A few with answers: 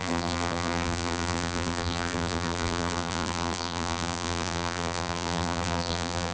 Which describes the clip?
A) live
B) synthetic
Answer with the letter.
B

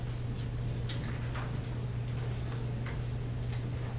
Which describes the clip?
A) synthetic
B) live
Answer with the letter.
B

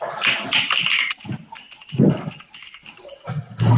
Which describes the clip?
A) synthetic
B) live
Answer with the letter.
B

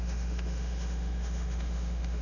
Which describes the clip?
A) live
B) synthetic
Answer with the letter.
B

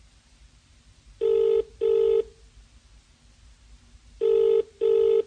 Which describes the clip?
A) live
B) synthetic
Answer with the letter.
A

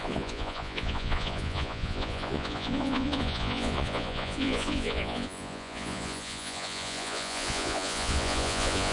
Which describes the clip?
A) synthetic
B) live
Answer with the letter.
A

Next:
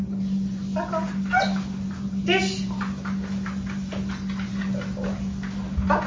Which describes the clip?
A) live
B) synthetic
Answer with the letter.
A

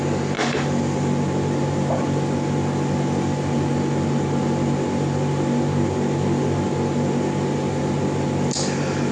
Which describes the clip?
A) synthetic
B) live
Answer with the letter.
B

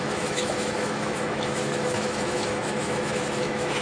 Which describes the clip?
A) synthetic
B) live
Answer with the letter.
A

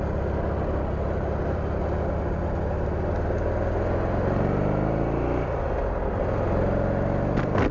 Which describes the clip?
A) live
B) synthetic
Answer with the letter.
A